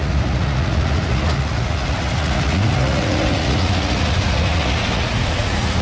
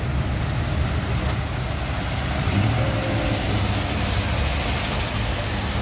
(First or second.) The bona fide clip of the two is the second